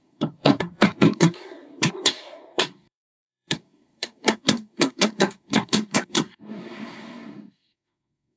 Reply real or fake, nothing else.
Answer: fake